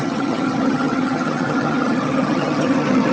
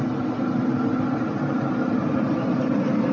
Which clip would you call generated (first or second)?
first